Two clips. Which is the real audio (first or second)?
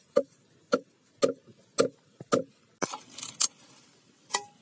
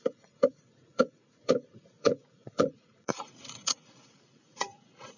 first